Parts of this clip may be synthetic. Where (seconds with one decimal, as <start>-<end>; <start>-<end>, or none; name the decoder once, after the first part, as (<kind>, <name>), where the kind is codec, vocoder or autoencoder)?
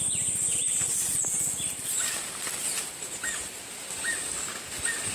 2.2-4.5 (vocoder, BigVGAN v2)